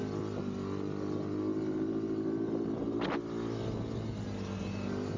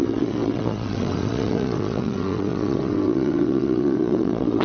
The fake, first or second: second